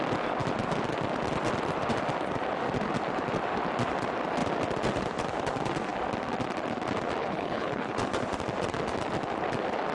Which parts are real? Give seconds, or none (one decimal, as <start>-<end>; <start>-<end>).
0.0-7.2; 7.9-9.9